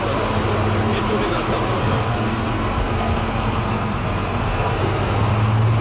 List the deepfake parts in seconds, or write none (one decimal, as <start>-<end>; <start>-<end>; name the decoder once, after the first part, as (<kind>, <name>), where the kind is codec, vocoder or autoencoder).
1.8-5.3 (codec, SNAC)